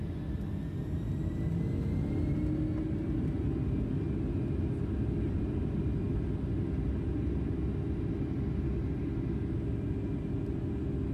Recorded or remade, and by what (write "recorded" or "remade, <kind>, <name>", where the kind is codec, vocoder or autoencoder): recorded